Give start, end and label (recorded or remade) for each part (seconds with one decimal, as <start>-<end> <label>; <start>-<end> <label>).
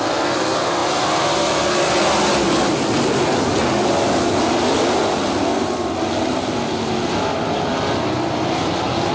0.0-9.1 recorded